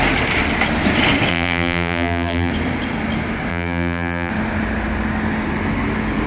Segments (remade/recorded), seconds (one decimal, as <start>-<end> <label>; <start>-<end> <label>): 0.0-1.3 recorded; 1.3-2.5 remade; 2.5-3.5 recorded; 3.5-4.3 remade; 4.3-6.3 recorded